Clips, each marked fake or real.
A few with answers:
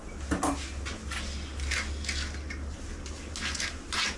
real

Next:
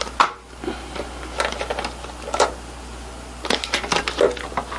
real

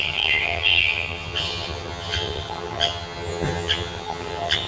fake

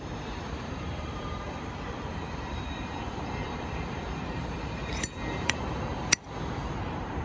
fake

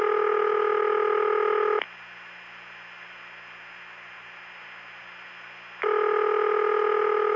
real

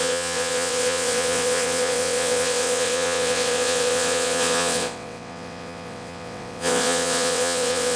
fake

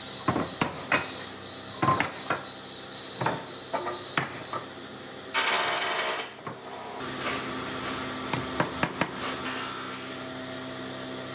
real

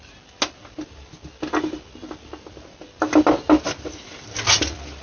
real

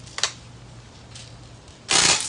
real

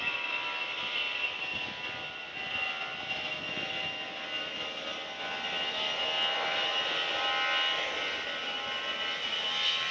real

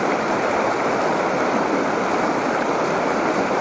real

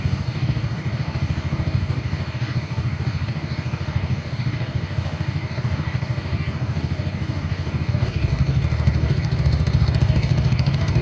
fake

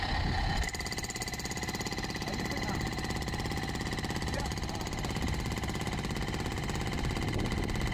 real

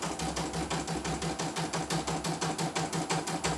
real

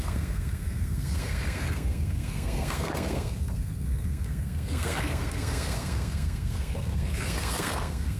fake